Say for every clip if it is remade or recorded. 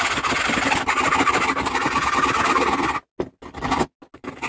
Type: recorded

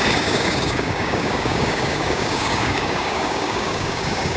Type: remade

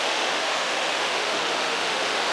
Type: remade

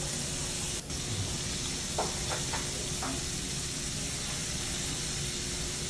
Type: recorded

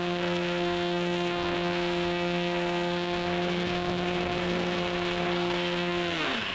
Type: remade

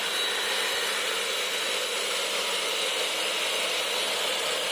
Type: recorded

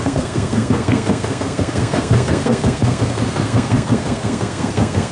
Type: remade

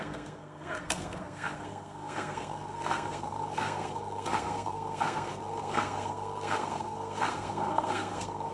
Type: remade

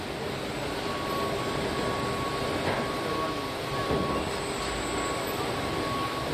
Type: recorded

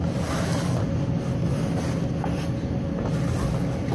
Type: recorded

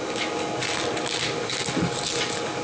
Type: recorded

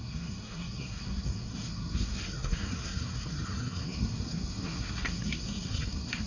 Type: remade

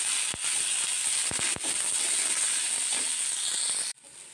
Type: recorded